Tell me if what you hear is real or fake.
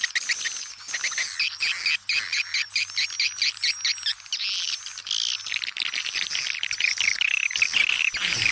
real